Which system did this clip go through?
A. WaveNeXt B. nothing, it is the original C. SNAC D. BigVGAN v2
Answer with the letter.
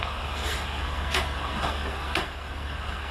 C